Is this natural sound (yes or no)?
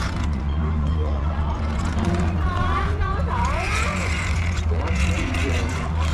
no